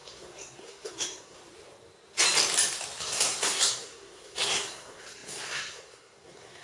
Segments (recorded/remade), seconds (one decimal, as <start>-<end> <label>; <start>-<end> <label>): 0.0-1.4 remade; 1.4-3.0 recorded; 3.0-6.6 remade